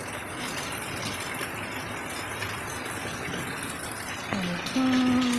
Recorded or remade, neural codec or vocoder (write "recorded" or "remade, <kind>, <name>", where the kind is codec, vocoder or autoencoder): recorded